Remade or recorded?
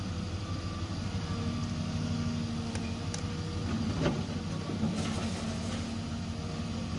recorded